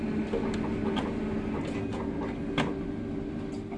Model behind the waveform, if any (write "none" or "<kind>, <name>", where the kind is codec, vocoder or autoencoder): none